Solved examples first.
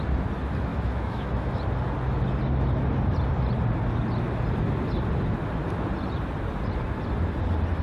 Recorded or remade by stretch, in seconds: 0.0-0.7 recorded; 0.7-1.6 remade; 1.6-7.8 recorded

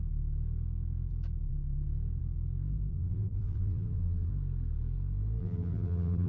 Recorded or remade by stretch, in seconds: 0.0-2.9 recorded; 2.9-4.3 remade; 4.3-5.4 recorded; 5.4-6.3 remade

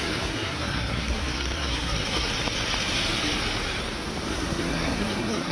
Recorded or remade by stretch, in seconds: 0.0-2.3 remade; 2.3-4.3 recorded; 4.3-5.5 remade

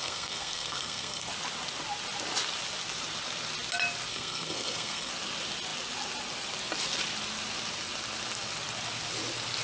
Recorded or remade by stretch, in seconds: 0.0-1.3 remade; 1.3-4.1 recorded; 4.1-5.1 remade; 5.1-9.6 recorded

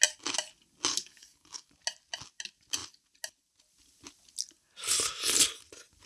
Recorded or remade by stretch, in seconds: 0.0-0.9 recorded; 0.9-1.7 remade; 1.7-6.1 recorded